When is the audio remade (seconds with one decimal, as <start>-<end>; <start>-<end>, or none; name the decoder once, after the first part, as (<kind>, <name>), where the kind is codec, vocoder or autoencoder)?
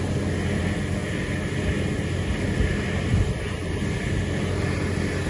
none